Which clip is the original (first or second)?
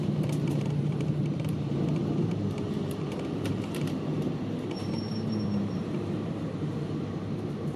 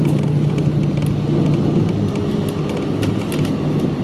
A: second